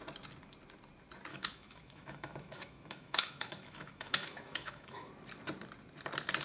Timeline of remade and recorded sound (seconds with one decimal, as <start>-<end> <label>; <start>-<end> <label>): 0.0-1.3 recorded; 1.3-5.1 remade; 5.1-6.4 recorded